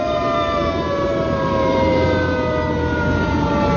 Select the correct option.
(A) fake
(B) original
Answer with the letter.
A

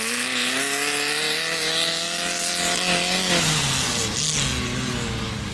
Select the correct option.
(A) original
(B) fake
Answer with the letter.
A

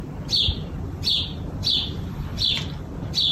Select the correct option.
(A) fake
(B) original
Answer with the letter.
B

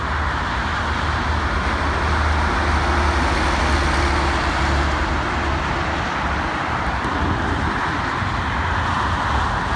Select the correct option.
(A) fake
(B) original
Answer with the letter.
B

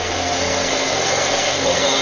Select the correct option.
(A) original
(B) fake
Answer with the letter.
B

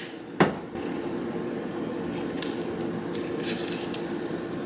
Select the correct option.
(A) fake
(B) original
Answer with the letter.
B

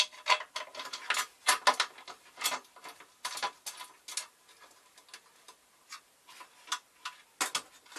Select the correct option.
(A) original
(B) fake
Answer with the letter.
A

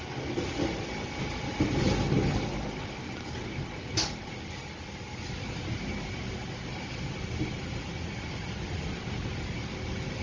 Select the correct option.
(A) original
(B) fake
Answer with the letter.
A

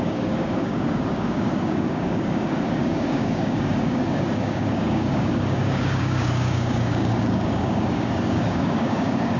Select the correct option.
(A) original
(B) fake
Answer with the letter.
B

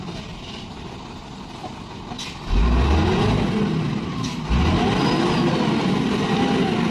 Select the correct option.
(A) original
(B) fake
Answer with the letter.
A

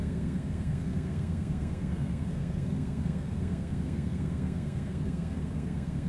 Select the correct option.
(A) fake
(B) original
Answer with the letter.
A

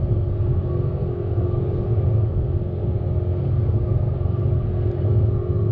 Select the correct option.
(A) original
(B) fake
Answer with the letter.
B